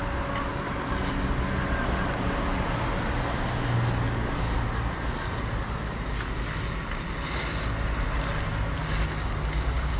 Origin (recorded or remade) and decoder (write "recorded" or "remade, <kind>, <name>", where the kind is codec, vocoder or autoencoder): recorded